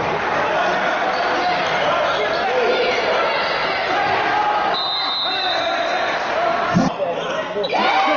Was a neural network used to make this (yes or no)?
no